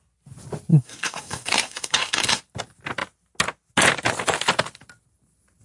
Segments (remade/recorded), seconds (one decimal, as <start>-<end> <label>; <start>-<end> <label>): 0.0-0.7 recorded; 0.7-2.4 remade; 2.4-5.6 recorded